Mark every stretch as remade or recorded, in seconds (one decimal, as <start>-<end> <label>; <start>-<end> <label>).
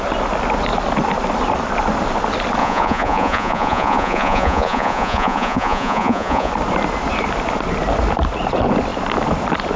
0.0-2.6 recorded; 2.6-6.5 remade; 6.5-9.8 recorded